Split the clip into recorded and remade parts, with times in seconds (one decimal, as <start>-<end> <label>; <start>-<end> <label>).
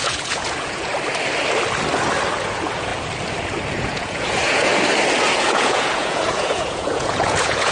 0.0-0.9 remade; 0.9-2.4 recorded; 2.4-2.9 remade; 2.9-3.7 recorded; 3.7-4.7 remade; 4.7-5.3 recorded; 5.3-7.7 remade